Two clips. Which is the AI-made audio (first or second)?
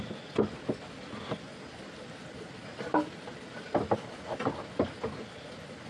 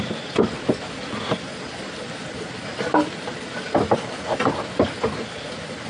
second